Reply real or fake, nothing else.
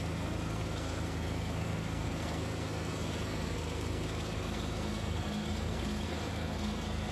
fake